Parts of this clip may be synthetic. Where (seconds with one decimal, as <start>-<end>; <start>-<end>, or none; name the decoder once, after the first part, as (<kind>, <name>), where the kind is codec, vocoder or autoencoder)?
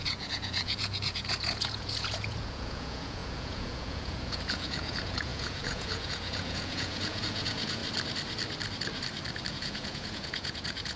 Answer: 0.0-7.8 (vocoder, Vocos); 9.5-11.0